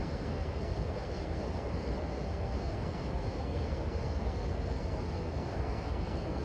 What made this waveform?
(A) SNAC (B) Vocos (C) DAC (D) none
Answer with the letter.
A